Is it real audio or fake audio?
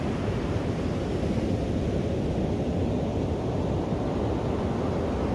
real